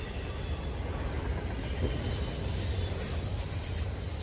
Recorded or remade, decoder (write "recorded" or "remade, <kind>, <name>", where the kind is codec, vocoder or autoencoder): recorded